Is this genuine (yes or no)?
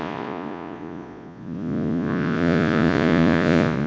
no